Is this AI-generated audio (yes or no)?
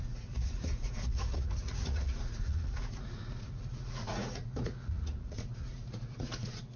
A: yes